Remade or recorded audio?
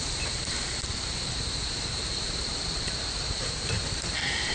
remade